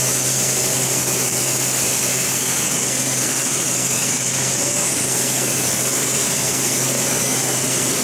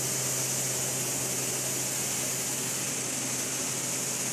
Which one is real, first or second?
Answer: second